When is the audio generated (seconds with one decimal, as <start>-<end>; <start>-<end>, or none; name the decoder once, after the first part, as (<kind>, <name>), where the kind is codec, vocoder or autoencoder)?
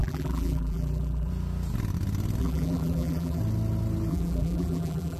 0.0-1.3 (vocoder, BigVGAN v2); 2.4-3.4; 4.1-5.2